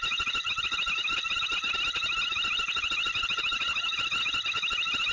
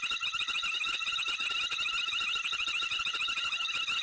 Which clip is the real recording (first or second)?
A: first